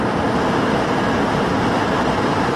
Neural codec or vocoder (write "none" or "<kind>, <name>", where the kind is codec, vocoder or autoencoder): none